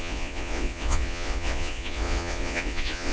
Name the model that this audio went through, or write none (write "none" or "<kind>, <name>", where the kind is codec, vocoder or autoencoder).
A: vocoder, Vocos